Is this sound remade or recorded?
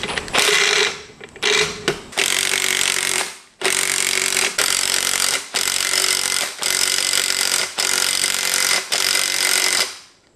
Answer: recorded